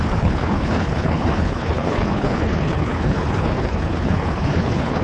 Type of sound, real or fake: fake